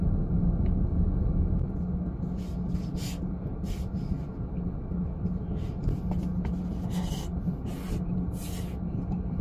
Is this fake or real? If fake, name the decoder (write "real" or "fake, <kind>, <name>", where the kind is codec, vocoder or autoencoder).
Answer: real